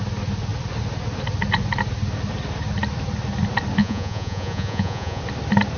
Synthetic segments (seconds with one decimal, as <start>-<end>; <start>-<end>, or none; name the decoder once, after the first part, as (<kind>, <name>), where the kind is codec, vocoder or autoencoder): 3.8-5.2 (vocoder, Vocos)